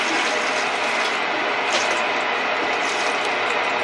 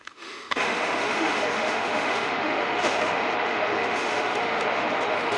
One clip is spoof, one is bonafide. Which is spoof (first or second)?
second